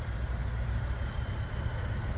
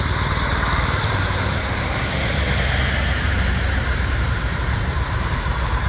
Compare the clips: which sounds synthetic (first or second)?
second